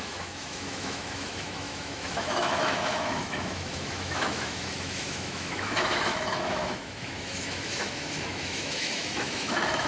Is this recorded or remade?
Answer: remade